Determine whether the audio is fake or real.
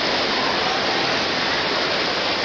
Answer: fake